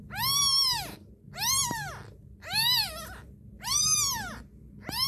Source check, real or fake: real